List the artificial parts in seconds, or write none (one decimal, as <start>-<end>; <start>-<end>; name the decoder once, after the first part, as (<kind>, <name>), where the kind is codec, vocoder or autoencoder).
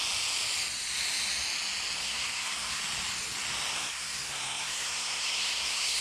2.0-2.8 (codec, SNAC); 3.7-6.0